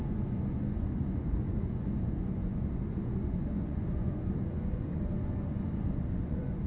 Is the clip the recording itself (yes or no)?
no